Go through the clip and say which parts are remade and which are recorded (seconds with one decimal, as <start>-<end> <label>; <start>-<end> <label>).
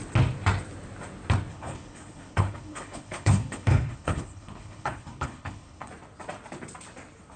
0.0-1.5 recorded; 1.5-5.9 remade; 5.9-7.4 recorded